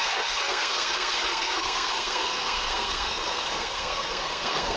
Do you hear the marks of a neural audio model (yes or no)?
yes